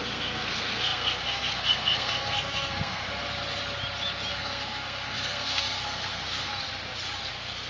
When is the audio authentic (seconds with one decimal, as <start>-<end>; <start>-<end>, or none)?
3.2-4.3; 6.5-7.3